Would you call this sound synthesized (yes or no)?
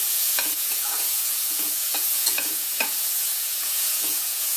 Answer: yes